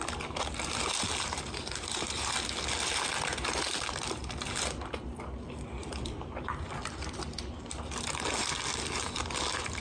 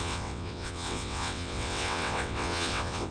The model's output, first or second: second